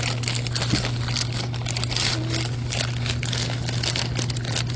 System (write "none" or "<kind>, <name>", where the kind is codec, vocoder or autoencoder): none